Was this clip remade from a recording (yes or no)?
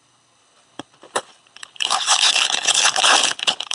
yes